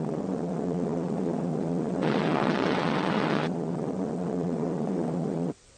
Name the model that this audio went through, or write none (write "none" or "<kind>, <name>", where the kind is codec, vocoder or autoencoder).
vocoder, WaveNeXt